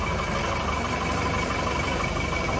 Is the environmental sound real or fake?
real